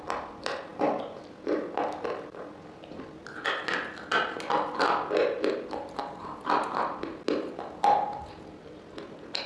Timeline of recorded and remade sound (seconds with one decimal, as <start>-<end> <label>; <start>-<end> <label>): 0.0-9.5 recorded